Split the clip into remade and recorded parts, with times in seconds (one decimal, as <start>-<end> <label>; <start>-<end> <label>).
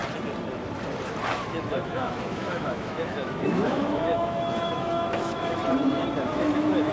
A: 0.0-1.5 recorded; 1.5-5.6 remade; 5.6-6.3 recorded; 6.3-6.9 remade